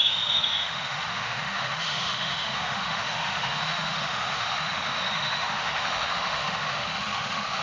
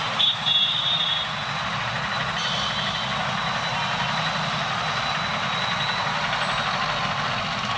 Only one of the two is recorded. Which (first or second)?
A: second